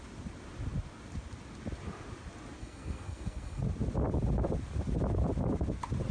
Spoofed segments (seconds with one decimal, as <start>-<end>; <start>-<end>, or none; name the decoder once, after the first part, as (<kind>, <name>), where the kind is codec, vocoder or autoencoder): 2.6-3.6 (codec, SNAC)